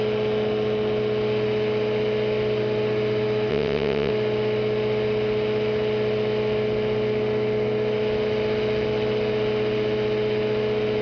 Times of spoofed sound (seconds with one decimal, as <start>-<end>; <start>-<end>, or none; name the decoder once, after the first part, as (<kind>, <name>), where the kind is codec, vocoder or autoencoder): 3.5-4.1 (vocoder, WaveNeXt)